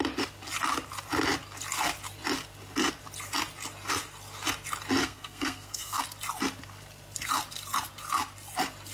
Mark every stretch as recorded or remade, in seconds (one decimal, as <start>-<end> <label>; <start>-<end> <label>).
0.0-5.0 recorded; 5.0-6.0 remade; 6.0-8.9 recorded